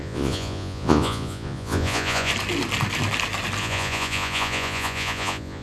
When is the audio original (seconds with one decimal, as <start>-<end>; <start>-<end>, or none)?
2.3-3.6